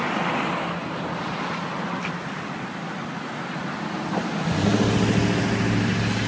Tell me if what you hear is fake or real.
real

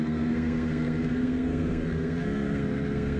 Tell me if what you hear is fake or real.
fake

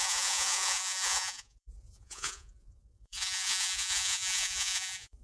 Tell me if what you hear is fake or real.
fake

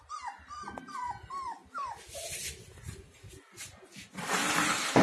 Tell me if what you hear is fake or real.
real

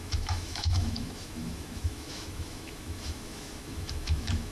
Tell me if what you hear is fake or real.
fake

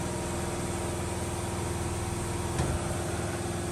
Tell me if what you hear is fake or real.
real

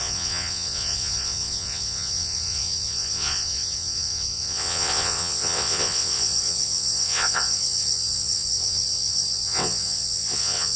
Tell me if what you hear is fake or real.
fake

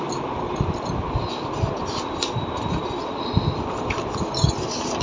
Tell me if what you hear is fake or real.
real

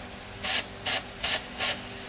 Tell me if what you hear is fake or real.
real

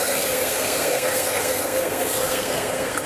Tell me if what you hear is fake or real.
fake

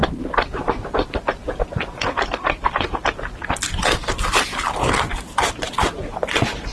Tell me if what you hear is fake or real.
real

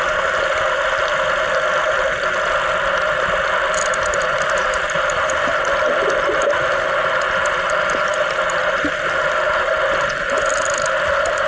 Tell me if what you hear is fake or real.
real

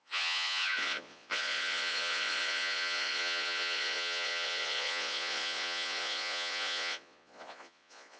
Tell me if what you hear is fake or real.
fake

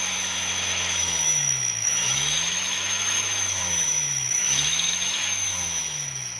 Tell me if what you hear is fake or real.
fake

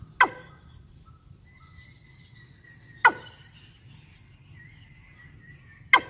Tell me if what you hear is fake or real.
real